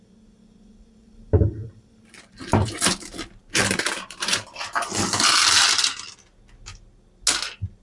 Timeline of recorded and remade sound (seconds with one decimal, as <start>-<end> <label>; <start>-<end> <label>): 0.0-1.0 recorded; 1.0-5.4 remade; 5.4-7.8 recorded